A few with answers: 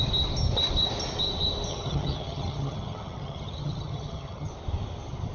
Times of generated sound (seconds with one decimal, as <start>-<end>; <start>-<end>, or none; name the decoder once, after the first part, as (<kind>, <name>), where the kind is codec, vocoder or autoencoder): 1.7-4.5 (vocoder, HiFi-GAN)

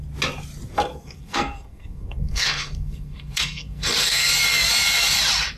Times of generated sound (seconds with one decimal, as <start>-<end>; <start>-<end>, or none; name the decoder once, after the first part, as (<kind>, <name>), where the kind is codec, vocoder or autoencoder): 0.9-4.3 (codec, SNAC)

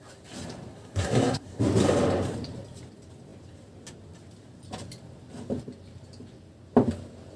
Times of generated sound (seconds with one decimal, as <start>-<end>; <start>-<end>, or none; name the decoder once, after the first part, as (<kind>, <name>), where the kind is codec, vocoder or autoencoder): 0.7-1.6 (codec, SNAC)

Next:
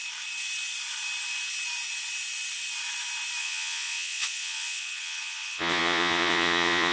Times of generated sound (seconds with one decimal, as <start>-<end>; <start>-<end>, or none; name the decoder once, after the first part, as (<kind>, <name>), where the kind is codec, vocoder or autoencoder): 3.4-6.9 (vocoder, Vocos)

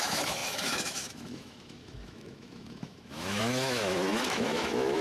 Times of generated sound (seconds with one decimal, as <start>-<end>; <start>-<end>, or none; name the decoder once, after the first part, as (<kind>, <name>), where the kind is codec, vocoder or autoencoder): 0.0-5.0 (autoencoder, DAC-VAE)